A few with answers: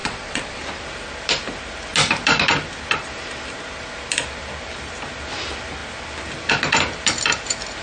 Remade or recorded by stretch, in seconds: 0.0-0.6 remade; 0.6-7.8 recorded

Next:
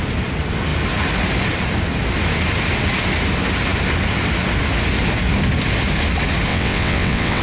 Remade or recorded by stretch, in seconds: 0.0-6.5 recorded; 6.5-7.4 remade

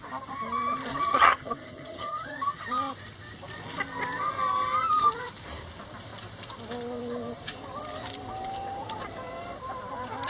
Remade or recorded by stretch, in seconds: 0.0-0.9 recorded; 0.9-2.6 remade; 2.6-10.3 recorded

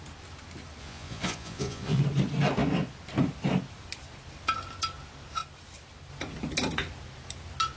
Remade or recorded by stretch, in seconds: 0.0-0.8 recorded; 0.8-2.0 remade; 2.0-7.8 recorded

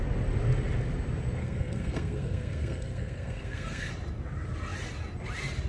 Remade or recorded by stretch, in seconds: 0.0-1.4 recorded; 1.4-3.9 remade; 3.9-5.7 recorded

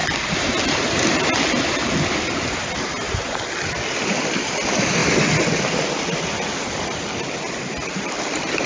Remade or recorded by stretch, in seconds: 0.0-8.7 recorded